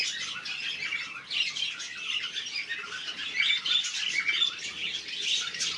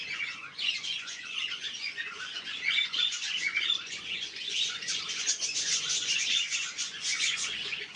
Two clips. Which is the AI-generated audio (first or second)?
second